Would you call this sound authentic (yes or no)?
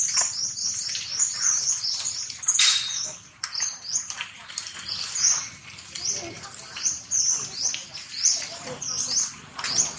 yes